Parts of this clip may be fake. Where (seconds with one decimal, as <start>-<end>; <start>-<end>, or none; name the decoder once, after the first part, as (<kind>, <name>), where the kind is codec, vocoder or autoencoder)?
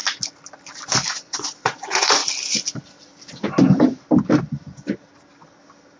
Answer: 1.1-2.2 (vocoder, Vocos)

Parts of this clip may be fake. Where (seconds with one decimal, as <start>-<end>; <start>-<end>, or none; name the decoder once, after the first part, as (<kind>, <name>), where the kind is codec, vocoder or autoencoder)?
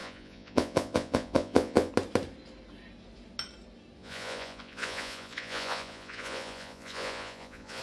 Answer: 0.0-1.9 (vocoder, Vocos); 4.0-7.8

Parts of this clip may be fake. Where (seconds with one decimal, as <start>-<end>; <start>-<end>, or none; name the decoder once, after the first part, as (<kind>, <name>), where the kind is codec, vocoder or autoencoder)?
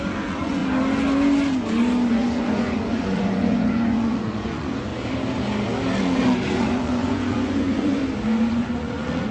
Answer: 0.0-0.6 (vocoder, Vocos); 2.1-4.9; 6.0-8.0; 8.5-9.3